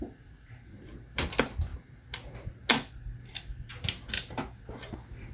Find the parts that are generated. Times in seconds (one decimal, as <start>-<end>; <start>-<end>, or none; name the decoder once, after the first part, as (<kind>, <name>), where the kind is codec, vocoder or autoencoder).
none